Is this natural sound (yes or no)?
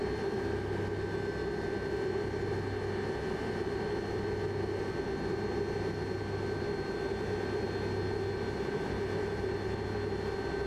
yes